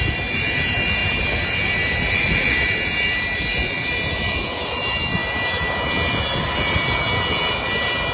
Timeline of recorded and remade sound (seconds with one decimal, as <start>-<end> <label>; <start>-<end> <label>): 0.0-8.1 recorded